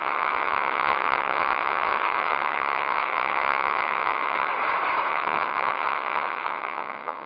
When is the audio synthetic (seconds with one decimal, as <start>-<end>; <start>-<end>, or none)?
0.0-4.5; 5.1-7.3